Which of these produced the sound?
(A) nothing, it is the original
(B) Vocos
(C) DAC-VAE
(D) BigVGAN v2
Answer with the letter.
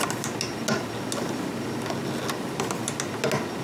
A